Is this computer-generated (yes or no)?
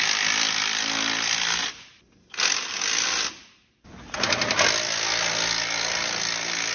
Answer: no